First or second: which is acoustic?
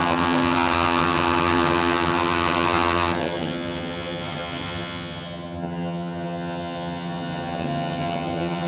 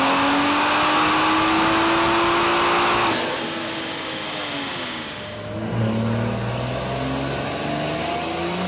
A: second